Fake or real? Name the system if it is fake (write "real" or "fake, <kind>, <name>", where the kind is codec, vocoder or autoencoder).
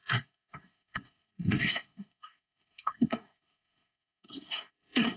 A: fake, codec, SNAC